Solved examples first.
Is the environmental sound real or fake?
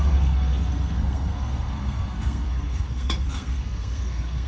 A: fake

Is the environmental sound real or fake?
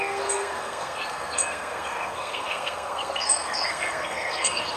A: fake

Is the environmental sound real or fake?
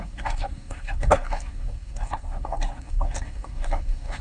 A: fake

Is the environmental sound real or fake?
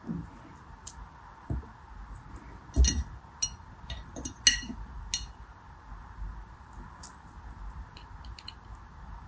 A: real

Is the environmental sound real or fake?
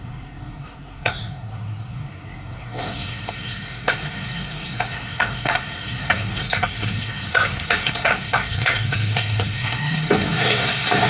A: fake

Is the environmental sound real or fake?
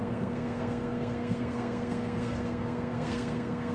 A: fake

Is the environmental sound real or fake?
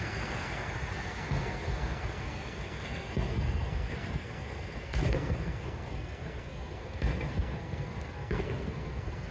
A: fake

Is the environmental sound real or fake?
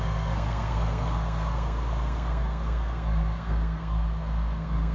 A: fake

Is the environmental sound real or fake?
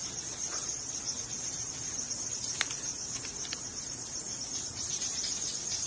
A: real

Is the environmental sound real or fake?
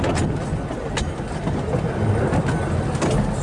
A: real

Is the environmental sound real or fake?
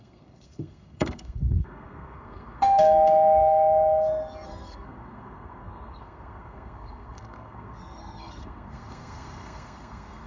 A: fake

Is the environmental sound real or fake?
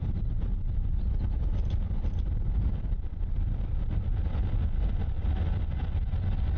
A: real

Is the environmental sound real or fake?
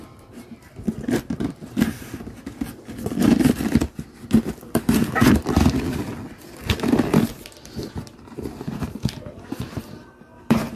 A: real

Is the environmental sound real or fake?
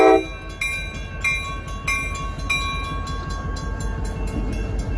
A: real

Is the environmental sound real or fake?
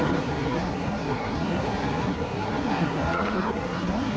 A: fake